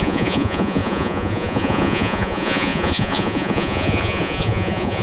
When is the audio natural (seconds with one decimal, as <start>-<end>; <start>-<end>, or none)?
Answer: none